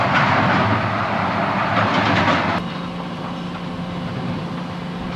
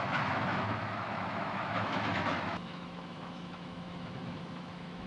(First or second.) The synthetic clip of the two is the second